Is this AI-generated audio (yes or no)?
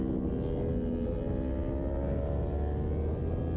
no